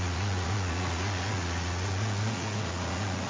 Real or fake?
fake